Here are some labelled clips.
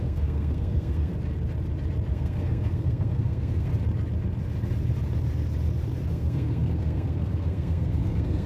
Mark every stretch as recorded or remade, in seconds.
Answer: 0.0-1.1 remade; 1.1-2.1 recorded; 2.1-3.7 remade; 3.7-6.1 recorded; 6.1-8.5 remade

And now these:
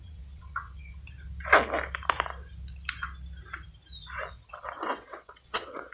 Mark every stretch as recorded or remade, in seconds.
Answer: 0.0-0.9 remade; 0.9-4.3 recorded; 4.3-5.9 remade

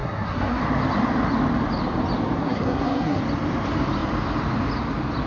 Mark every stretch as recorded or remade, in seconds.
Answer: 0.0-0.6 remade; 0.6-2.4 recorded; 2.4-3.2 remade; 3.2-5.3 recorded

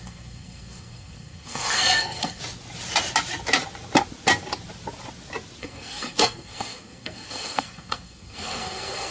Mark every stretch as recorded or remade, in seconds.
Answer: 0.0-2.4 remade; 2.4-5.6 recorded; 5.6-9.1 remade